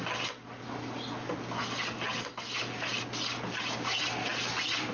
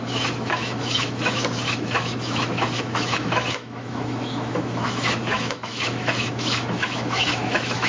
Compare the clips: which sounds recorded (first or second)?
first